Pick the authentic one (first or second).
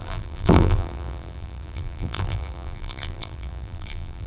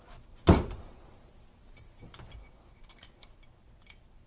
second